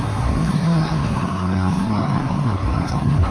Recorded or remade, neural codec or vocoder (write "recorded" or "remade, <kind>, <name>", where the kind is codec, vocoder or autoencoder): remade, codec, SNAC